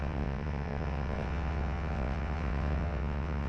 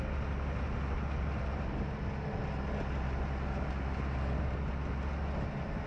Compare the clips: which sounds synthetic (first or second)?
first